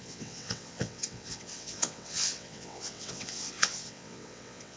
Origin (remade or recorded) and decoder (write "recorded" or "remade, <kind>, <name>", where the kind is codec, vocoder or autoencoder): remade, vocoder, WaveNeXt